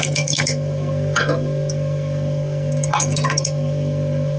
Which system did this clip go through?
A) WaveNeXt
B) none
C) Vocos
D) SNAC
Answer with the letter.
D